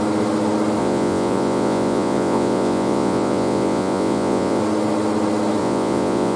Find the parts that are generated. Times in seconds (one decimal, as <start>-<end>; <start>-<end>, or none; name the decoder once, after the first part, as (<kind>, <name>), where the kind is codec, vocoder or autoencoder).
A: 0.8-4.6 (vocoder, Vocos); 5.6-6.4